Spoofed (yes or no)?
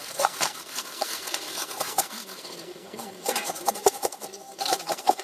yes